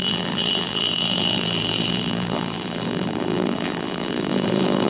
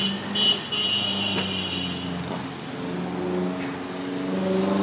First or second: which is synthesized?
first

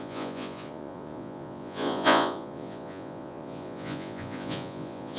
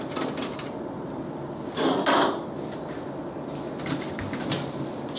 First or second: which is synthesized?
first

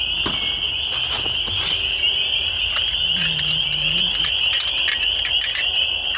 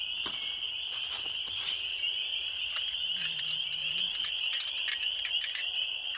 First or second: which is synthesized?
second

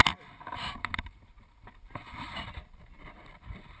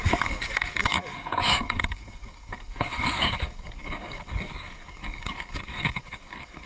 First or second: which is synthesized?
second